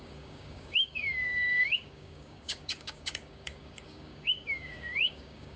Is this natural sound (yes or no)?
no